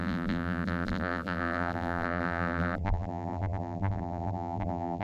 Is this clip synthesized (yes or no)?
yes